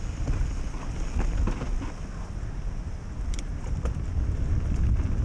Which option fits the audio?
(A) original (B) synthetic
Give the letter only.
A